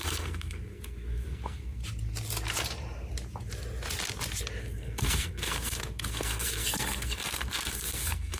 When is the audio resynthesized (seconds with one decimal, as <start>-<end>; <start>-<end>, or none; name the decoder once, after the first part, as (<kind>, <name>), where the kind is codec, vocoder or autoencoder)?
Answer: 0.0-1.8 (codec, SNAC); 4.6-8.4